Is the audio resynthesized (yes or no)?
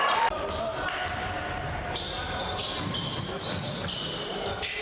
no